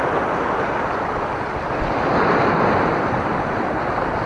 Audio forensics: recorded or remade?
recorded